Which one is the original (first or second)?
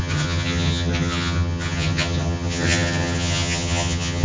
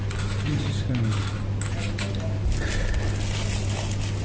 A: second